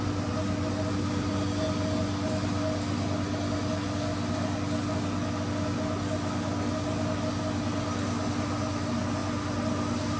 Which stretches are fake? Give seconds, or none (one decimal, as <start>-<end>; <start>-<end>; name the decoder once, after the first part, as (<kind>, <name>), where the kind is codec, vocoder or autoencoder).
none